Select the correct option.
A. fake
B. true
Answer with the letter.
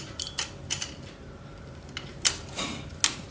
B